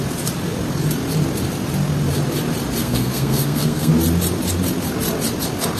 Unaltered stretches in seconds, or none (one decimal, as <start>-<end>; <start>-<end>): 0.0-2.8; 3.9-5.8